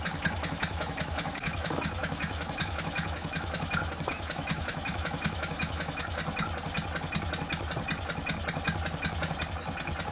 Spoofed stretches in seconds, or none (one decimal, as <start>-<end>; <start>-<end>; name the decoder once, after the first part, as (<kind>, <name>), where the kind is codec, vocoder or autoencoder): 0.0-6.2 (autoencoder, DAC-VAE)